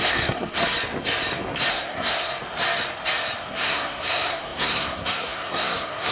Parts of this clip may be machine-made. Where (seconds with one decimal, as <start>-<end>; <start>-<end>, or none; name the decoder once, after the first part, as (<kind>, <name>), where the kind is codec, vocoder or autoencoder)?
0.0-0.6 (codec, SNAC); 1.7-2.3; 3.5-6.1